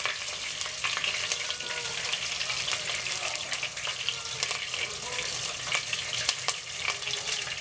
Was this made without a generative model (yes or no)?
yes